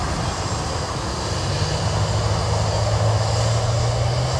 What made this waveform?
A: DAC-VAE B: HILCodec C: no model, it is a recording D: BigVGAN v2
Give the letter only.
C